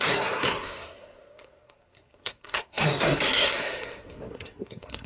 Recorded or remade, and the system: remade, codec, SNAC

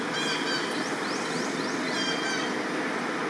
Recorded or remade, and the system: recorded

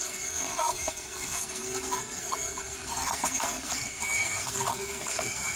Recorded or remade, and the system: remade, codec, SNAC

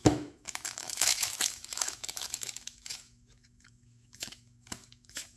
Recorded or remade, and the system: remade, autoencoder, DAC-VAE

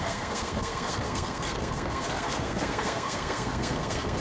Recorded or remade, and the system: remade, codec, SNAC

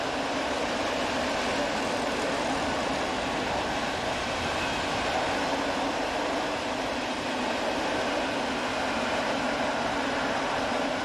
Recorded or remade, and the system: recorded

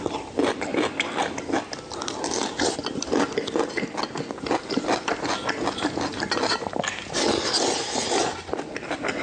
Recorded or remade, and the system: recorded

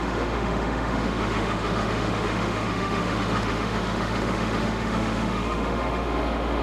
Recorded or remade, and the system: remade, autoencoder, DAC-VAE